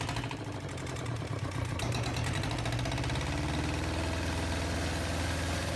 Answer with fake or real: real